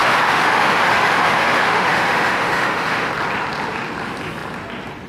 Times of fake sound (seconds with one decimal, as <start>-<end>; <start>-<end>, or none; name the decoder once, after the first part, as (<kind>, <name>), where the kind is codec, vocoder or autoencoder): 0.0-3.1 (autoencoder, DAC-VAE)